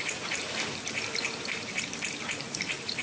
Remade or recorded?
remade